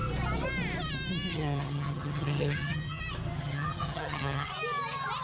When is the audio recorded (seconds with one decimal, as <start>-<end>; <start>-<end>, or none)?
0.0-1.3; 3.0-3.4; 4.5-5.2